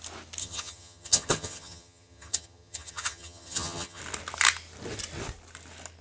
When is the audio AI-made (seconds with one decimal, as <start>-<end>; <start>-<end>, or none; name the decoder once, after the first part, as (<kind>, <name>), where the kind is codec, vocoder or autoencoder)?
0.4-4.0 (vocoder, HiFi-GAN)